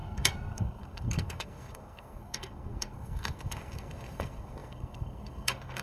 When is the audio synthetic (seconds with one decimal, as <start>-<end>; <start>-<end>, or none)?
0.0-5.8